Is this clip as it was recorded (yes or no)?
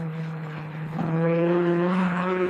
no